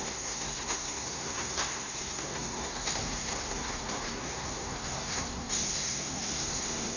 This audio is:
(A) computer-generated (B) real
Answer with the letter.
A